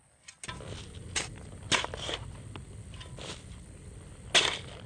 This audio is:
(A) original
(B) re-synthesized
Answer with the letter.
A